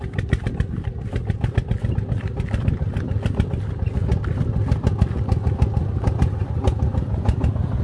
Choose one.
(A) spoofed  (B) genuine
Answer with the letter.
B